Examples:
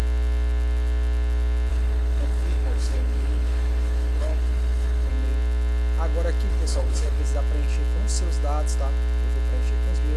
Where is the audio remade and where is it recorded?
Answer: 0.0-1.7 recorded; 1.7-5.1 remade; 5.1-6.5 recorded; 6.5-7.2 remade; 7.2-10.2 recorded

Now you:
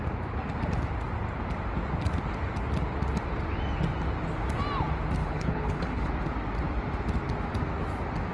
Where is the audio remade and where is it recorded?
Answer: 0.0-5.2 recorded; 5.2-6.1 remade; 6.1-8.3 recorded

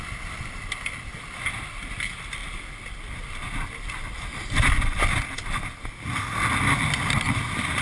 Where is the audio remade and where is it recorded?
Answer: 0.0-7.8 recorded

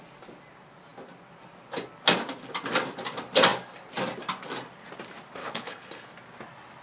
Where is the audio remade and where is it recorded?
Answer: 0.0-5.4 recorded; 5.4-6.1 remade; 6.1-6.8 recorded

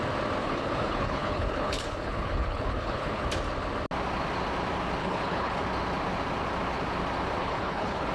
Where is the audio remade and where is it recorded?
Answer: 0.0-0.4 recorded; 0.4-3.3 remade; 3.3-5.0 recorded; 5.0-5.6 remade; 5.6-7.4 recorded; 7.4-8.1 remade